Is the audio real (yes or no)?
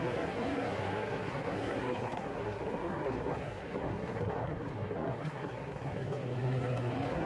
no